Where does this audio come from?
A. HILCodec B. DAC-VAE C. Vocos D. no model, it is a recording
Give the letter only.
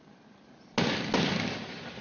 D